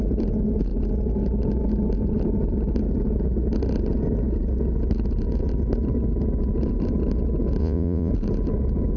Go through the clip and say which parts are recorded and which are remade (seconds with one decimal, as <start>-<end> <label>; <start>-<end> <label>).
0.0-7.6 recorded; 7.6-8.1 remade; 8.1-9.0 recorded